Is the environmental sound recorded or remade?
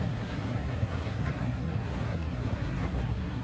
remade